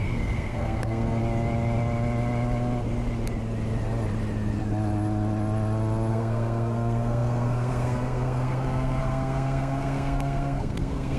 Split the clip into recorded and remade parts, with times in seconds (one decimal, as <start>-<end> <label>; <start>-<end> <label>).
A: 0.0-1.2 remade; 1.2-6.1 recorded; 6.1-11.2 remade

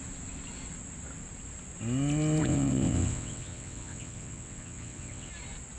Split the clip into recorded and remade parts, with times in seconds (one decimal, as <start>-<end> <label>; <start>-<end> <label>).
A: 0.0-2.4 recorded; 2.4-5.3 remade; 5.3-5.8 recorded

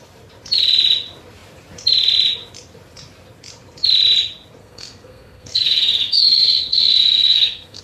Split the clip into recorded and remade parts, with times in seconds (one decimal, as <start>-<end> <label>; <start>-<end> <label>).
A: 0.0-4.6 recorded; 4.6-7.8 remade

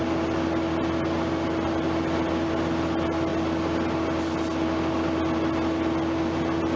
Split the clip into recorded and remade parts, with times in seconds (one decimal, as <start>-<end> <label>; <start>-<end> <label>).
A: 0.0-6.8 recorded

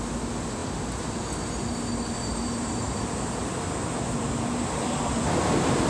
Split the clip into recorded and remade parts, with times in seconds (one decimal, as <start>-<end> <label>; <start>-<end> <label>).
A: 0.0-2.3 recorded; 2.3-5.9 remade

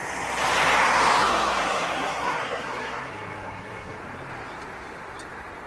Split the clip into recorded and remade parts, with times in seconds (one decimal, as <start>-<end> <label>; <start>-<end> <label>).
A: 0.0-1.2 recorded; 1.2-4.0 remade; 4.0-5.7 recorded

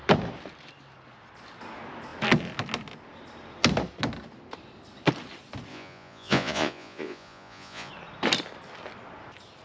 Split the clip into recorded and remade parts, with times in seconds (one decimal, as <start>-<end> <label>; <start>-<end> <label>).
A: 0.0-5.7 recorded; 5.7-7.9 remade; 7.9-9.6 recorded